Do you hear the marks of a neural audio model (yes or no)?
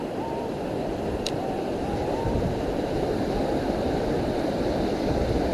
yes